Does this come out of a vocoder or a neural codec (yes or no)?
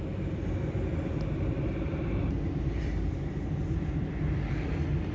no